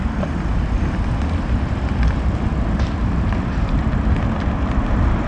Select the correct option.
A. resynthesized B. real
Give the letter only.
A